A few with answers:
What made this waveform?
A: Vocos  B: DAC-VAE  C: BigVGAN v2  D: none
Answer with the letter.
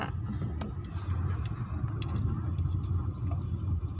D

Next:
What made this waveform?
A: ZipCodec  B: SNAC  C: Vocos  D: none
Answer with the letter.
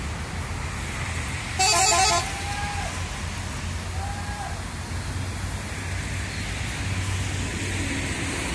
D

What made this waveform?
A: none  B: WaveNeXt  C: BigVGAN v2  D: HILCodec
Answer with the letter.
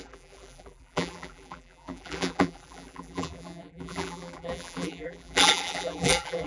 C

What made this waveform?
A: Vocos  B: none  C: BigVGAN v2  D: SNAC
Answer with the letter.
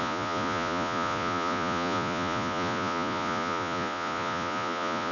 A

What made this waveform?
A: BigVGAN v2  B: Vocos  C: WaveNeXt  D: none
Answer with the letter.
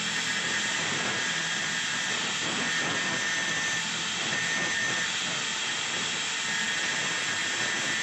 D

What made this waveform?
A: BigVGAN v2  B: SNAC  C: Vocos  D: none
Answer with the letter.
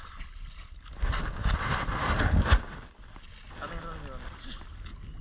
D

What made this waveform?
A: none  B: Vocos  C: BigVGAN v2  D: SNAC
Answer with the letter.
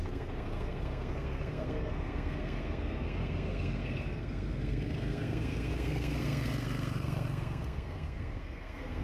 D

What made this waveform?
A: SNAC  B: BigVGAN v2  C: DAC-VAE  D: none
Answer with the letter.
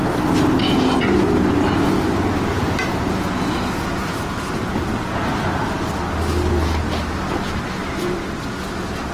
D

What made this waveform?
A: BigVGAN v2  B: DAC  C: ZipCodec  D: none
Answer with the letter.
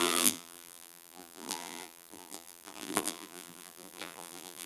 A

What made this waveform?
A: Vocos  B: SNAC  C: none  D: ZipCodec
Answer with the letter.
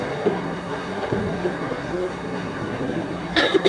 B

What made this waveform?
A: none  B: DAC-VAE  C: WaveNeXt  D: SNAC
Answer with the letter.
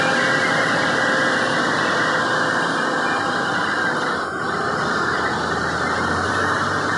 A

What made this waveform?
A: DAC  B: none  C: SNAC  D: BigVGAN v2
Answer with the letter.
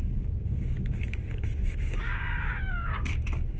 A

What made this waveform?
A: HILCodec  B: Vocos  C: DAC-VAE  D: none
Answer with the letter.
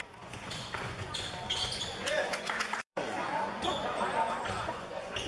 B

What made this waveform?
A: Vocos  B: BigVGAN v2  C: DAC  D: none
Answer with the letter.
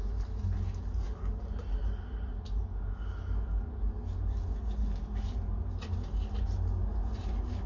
D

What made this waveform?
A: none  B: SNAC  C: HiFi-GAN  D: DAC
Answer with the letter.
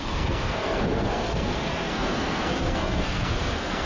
B